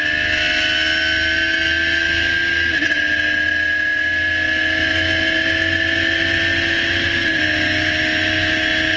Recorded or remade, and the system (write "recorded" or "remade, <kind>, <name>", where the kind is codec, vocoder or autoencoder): recorded